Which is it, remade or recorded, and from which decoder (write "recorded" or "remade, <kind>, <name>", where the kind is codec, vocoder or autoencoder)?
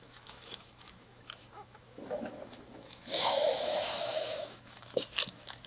remade, autoencoder, DAC-VAE